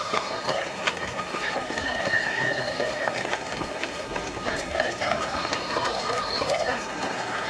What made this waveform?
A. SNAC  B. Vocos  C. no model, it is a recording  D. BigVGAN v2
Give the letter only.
A